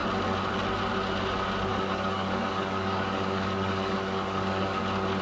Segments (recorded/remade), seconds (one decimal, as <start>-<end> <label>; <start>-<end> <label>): 0.0-1.7 recorded; 1.7-4.8 remade; 4.8-5.2 recorded